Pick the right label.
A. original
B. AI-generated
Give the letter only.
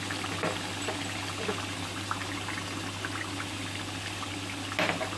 A